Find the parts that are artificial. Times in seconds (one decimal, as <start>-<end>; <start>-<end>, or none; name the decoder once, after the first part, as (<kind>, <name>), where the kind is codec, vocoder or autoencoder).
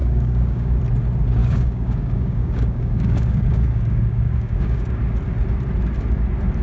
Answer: 0.0-0.8 (codec, DAC); 1.4-5.0